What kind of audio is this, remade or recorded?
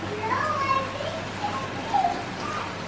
recorded